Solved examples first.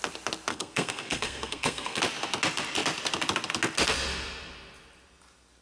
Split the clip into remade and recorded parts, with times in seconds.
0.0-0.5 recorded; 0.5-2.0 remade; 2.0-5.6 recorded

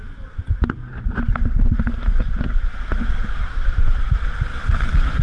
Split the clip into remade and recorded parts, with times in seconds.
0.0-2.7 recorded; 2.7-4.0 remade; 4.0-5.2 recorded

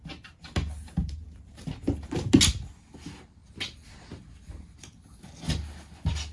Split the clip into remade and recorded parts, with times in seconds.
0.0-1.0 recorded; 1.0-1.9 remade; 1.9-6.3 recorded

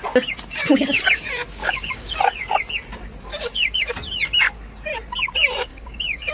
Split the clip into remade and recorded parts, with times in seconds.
0.0-1.6 recorded; 1.6-2.2 remade; 2.2-3.3 recorded; 3.3-3.9 remade; 3.9-5.7 recorded; 5.7-6.3 remade

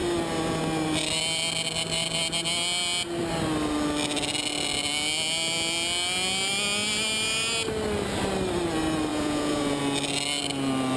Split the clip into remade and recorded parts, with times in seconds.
0.0-9.1 recorded; 9.1-9.8 remade; 9.8-11.0 recorded